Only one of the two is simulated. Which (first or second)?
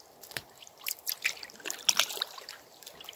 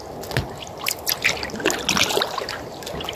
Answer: first